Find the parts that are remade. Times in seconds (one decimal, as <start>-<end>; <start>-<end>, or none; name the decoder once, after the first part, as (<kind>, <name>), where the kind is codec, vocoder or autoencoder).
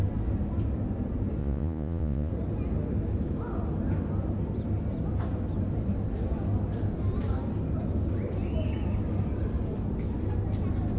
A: 1.4-2.3 (vocoder, Vocos)